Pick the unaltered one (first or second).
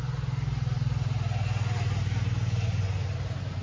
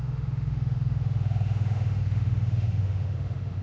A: first